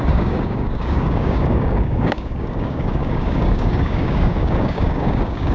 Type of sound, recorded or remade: remade